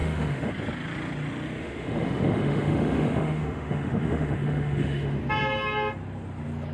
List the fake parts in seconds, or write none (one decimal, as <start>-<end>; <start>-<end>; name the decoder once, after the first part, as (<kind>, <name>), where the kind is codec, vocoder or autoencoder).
0.0-0.5 (autoencoder, DAC-VAE); 1.6-5.2